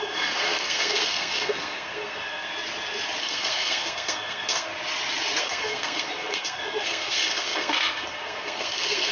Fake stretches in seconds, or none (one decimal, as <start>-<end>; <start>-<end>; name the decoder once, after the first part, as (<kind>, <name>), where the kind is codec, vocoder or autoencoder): 0.0-2.5 (codec, SNAC); 3.2-4.7; 5.4-9.1